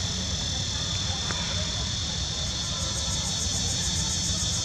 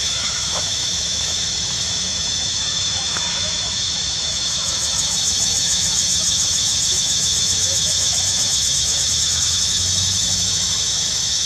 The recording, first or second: first